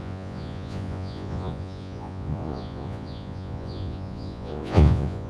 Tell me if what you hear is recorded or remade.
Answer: remade